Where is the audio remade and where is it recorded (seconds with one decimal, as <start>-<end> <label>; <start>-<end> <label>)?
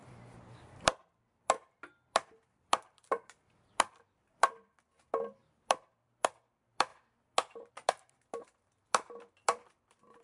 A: 0.0-6.9 remade; 6.9-7.7 recorded; 7.7-10.2 remade